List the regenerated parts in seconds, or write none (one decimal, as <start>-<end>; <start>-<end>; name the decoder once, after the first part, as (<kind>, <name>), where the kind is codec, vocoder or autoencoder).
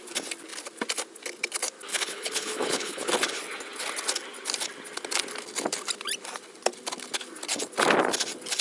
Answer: 1.9-3.1 (codec, HILCodec)